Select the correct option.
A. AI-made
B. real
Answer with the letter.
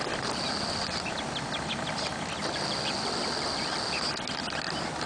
B